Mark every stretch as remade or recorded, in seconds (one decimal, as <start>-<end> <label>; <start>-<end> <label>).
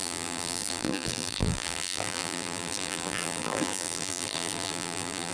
0.0-5.3 remade